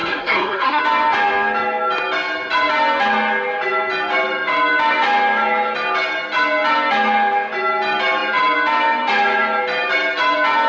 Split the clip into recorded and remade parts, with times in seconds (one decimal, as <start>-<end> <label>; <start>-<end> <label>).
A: 0.0-0.8 remade; 0.8-10.7 recorded